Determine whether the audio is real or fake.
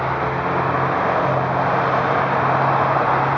real